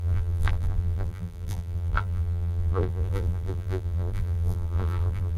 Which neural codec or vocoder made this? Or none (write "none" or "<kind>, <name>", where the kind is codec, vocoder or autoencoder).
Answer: vocoder, BigVGAN v2